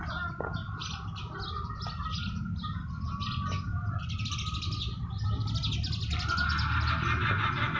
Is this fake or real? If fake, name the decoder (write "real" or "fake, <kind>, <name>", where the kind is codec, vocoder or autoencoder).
real